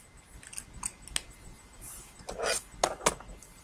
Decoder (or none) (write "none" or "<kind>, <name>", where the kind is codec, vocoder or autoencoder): none